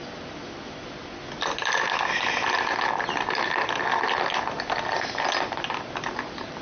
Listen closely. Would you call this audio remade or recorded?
recorded